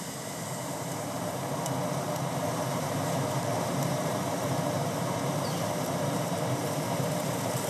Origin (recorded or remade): remade